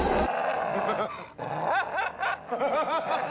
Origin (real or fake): real